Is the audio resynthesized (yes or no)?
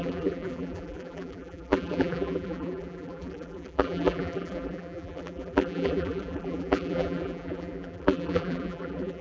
yes